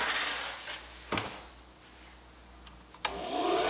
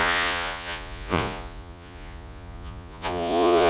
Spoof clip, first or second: second